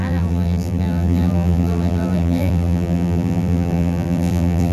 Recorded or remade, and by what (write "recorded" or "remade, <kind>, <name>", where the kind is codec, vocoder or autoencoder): remade, vocoder, BigVGAN v2